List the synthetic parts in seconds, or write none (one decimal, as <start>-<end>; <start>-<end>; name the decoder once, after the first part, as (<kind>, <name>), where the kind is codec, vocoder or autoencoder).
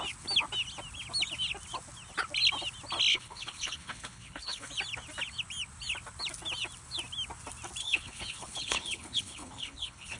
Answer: 3.1-4.7 (codec, HILCodec); 7.8-10.2